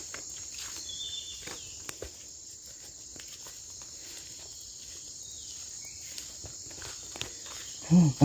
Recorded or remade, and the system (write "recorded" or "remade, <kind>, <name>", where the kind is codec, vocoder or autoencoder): recorded